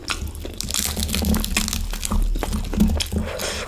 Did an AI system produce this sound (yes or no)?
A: no